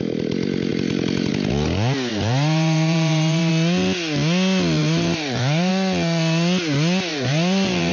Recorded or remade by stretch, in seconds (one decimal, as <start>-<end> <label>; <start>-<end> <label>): 0.0-0.7 recorded; 0.7-1.3 remade; 1.3-2.1 recorded; 2.1-3.5 remade; 3.5-4.8 recorded; 4.8-5.7 remade; 5.7-7.1 recorded; 7.1-7.9 remade

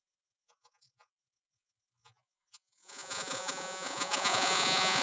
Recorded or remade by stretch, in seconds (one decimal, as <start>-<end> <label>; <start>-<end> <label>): 0.0-5.0 remade

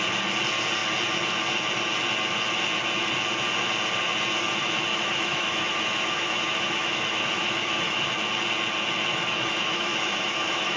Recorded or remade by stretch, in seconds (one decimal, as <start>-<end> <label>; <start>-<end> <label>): 0.0-4.9 recorded; 4.9-8.1 remade; 8.1-9.1 recorded; 9.1-10.8 remade

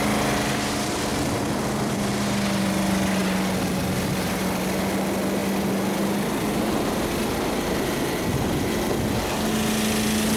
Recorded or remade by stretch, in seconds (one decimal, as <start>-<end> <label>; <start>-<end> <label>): 0.0-1.1 recorded; 1.1-2.1 remade; 2.1-10.4 recorded

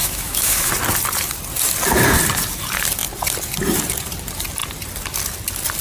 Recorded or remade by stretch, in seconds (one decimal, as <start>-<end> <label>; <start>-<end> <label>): 0.0-0.7 remade; 0.7-5.8 recorded

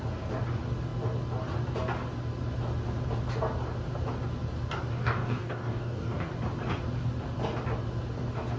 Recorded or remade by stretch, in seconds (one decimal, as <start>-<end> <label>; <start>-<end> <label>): 0.0-5.0 recorded; 5.0-6.3 remade; 6.3-8.6 recorded

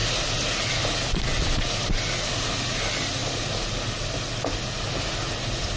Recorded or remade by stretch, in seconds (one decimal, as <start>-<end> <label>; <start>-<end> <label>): 0.0-5.8 recorded